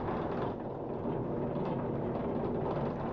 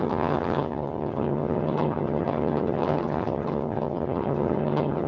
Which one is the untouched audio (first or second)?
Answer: first